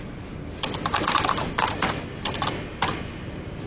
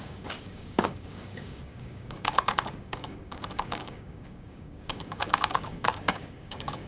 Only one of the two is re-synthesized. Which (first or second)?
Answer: second